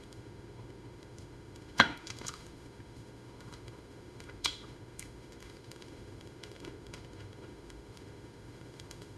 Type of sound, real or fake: fake